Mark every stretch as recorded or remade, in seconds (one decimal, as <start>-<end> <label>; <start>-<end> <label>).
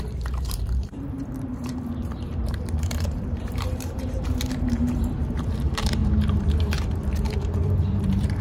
0.0-8.4 remade